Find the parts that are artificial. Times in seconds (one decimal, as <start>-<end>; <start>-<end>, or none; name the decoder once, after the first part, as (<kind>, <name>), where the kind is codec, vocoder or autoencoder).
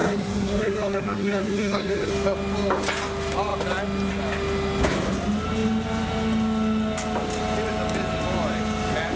0.0-2.1 (codec, SNAC)